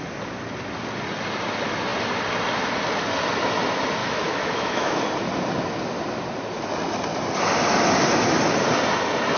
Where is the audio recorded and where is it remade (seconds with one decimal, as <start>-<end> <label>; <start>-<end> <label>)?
0.0-4.0 recorded; 4.0-5.0 remade; 5.0-9.4 recorded